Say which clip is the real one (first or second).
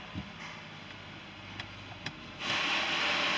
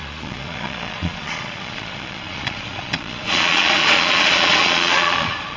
first